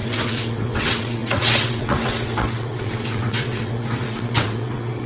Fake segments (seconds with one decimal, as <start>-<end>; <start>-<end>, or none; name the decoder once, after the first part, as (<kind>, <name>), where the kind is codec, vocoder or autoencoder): 0.0-5.1 (vocoder, WaveNeXt)